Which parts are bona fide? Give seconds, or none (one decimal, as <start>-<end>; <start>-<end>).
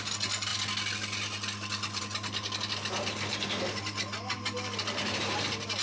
0.0-5.8